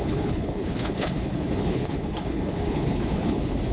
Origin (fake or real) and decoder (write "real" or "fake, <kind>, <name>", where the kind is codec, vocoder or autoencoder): fake, codec, HILCodec